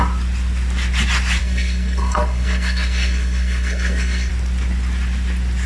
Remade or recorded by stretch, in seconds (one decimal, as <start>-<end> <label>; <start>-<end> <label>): 0.0-1.4 recorded; 1.4-4.3 remade; 4.3-5.7 recorded